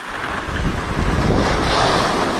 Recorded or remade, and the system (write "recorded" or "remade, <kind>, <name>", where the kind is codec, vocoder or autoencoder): recorded